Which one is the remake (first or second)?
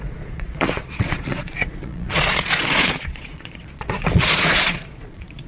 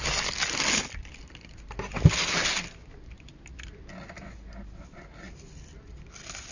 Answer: first